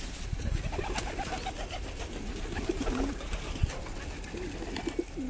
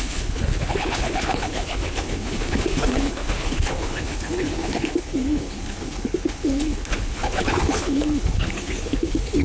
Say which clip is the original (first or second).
first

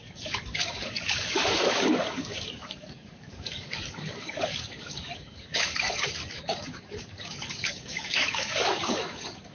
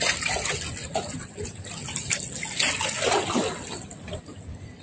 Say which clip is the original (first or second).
second